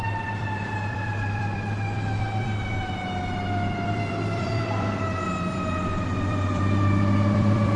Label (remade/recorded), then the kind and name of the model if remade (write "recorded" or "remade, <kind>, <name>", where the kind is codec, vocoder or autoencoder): remade, vocoder, BigVGAN v2